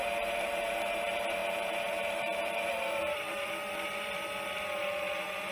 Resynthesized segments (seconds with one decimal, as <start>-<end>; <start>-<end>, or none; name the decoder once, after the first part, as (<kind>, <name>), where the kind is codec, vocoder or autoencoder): 0.0-3.6 (vocoder, BigVGAN v2)

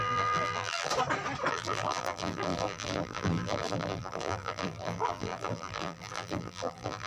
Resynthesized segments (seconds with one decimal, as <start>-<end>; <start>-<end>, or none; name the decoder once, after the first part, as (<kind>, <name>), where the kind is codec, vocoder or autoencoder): 0.0-0.9 (vocoder, BigVGAN v2); 1.5-7.1